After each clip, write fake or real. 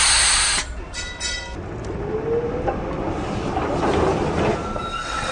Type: real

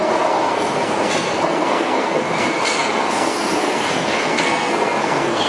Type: fake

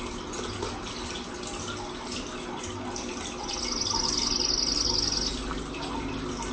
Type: real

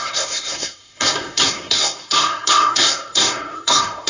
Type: fake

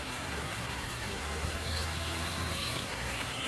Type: fake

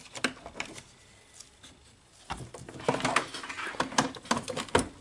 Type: real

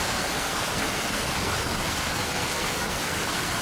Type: fake